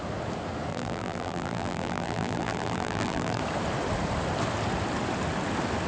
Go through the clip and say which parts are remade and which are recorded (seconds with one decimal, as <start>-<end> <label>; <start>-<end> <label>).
0.0-0.7 recorded; 0.7-3.4 remade; 3.4-5.9 recorded